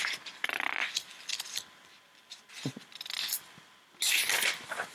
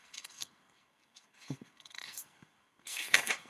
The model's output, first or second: second